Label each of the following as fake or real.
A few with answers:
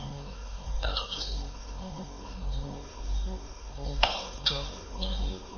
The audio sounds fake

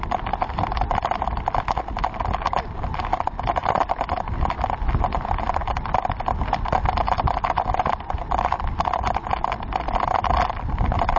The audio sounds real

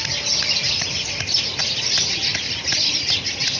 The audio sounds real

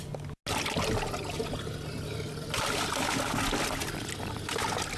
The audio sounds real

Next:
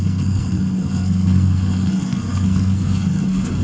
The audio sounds fake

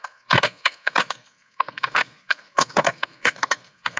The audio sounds fake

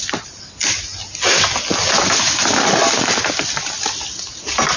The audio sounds real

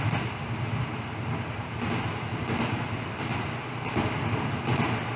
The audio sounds real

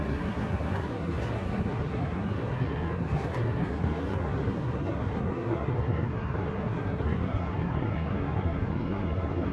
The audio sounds fake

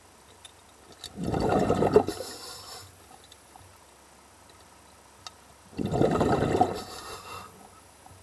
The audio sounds real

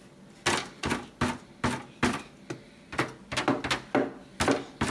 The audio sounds real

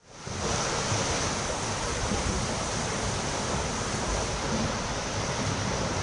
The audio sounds real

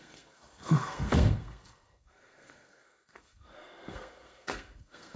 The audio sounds fake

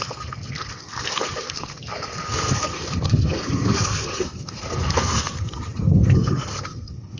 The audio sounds fake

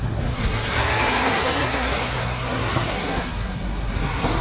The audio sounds fake